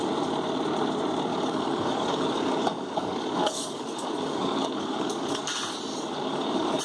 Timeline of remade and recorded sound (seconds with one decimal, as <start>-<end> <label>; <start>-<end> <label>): 0.0-1.3 recorded; 1.3-5.4 remade; 5.4-5.9 recorded; 5.9-6.8 remade